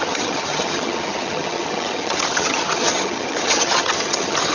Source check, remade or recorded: remade